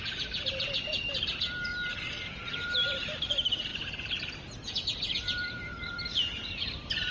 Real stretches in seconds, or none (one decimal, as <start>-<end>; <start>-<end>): 1.7-2.5; 3.7-5.0